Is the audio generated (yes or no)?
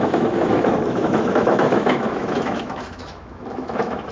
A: yes